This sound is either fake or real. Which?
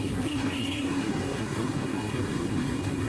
fake